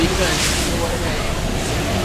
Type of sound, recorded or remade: recorded